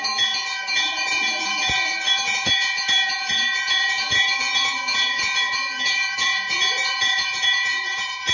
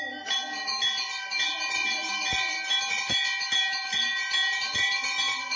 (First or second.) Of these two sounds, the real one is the second